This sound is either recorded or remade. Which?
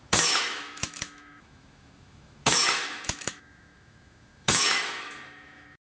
remade